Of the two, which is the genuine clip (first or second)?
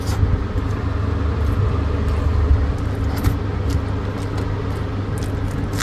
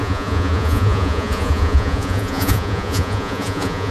first